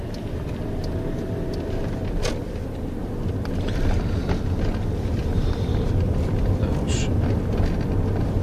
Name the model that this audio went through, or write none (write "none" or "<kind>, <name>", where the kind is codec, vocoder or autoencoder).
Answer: none